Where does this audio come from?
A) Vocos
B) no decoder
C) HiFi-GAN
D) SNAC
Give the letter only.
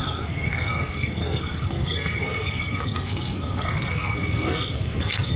D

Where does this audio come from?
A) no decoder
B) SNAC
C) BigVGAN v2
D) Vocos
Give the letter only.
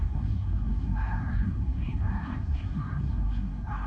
B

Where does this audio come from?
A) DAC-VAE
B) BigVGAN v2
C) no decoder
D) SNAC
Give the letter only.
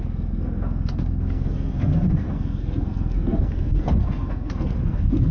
D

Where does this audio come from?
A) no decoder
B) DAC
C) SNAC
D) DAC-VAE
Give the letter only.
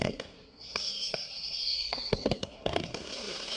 C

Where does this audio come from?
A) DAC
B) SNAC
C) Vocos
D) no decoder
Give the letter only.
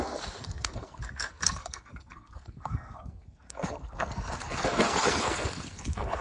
B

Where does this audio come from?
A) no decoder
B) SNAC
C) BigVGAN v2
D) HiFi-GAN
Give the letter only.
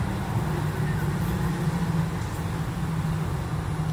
A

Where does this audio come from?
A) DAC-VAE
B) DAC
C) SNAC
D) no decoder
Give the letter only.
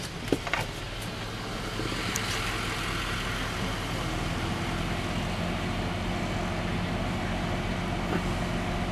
D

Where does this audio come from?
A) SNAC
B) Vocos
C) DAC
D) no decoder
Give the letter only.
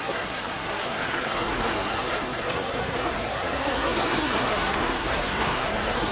A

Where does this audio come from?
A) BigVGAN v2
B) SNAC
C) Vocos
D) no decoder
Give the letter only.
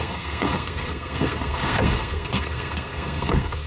B